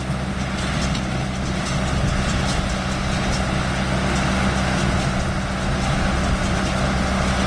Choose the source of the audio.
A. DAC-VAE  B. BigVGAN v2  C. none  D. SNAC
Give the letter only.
C